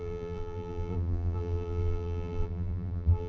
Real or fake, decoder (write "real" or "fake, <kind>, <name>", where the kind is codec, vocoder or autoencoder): fake, vocoder, BigVGAN v2